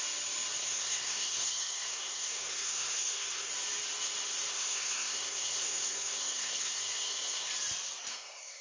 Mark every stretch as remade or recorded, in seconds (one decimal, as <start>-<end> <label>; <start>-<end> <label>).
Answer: 0.0-0.6 recorded; 0.6-3.5 remade; 3.5-4.5 recorded; 4.5-7.5 remade; 7.5-8.1 recorded; 8.1-8.6 remade